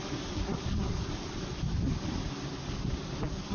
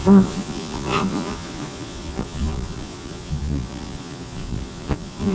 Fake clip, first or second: second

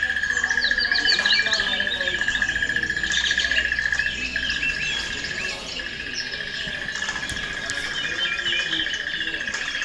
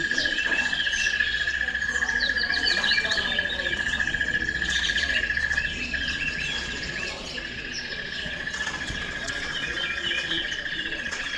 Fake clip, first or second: second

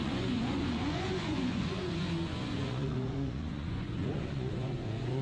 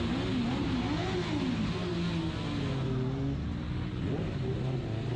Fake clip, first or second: first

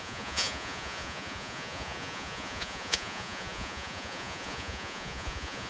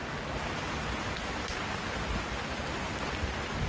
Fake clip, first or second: first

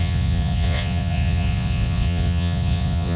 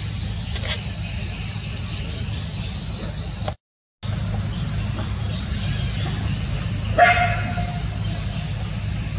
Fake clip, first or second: first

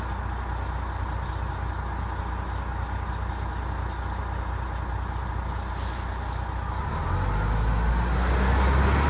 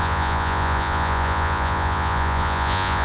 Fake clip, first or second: second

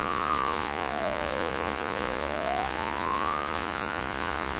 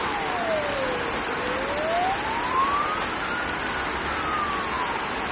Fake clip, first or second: first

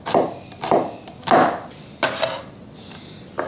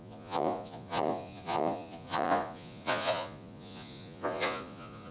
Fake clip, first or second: second